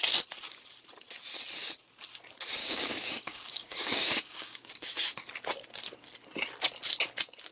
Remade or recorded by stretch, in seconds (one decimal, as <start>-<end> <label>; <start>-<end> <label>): 0.0-2.6 recorded; 2.6-4.7 remade; 4.7-7.5 recorded